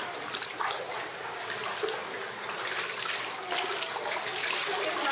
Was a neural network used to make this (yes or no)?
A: no